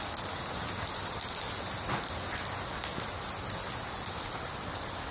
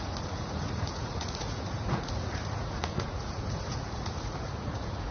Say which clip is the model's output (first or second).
second